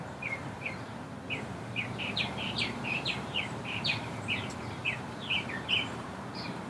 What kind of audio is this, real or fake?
fake